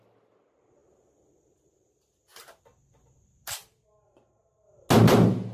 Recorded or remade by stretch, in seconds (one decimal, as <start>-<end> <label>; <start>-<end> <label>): 0.0-5.5 recorded